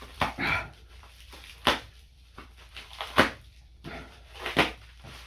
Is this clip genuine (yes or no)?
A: no